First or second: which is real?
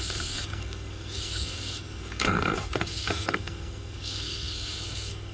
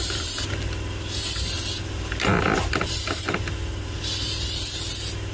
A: second